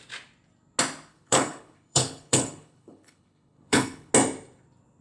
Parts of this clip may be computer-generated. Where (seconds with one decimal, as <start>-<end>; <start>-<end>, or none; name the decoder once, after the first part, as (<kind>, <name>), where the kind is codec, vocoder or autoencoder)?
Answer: 1.1-4.1 (codec, HILCodec)